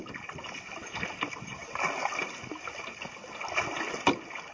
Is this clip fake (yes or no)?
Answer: no